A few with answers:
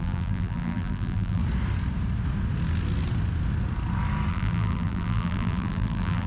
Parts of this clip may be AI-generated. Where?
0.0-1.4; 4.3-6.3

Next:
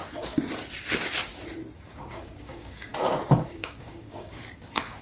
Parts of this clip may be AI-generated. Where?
0.9-1.3; 1.9-2.9; 3.5-5.0